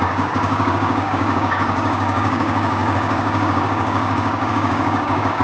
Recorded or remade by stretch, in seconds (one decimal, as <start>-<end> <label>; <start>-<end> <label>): 0.0-5.4 remade